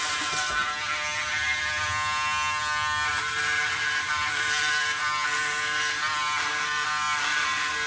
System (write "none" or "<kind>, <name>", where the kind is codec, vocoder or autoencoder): none